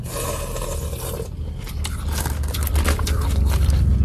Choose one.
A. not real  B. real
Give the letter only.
B